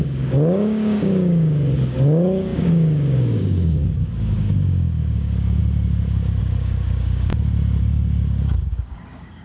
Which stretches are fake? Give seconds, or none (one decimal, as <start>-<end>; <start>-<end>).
0.0-5.6; 6.4-7.3; 7.8-9.4